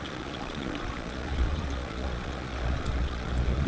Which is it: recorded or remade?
remade